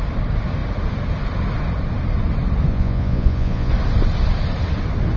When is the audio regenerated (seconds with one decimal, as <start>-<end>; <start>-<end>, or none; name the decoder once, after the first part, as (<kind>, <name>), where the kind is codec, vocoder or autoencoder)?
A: 2.7-3.7 (vocoder, Vocos)